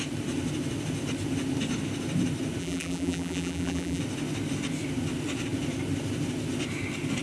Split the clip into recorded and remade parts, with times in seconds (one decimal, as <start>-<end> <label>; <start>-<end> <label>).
0.0-2.6 recorded; 2.6-4.0 remade; 4.0-7.2 recorded